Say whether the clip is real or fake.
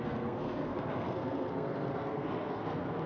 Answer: fake